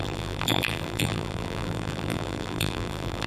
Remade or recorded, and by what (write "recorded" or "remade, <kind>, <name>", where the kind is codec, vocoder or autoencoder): remade, vocoder, BigVGAN v2